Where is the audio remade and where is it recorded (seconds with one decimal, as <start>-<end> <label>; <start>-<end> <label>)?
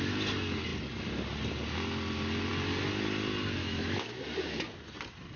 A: 0.0-3.6 recorded; 3.6-4.2 remade; 4.2-5.4 recorded